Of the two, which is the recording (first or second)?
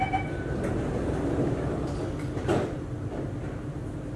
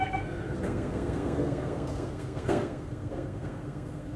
first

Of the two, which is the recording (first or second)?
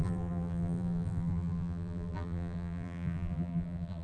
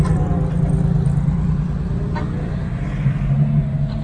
second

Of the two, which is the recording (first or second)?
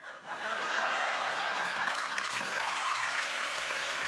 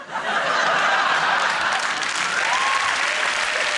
second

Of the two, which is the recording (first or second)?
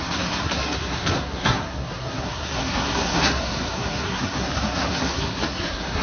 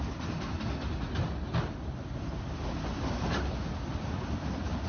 second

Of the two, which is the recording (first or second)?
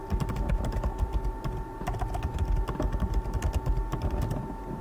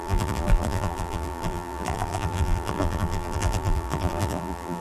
first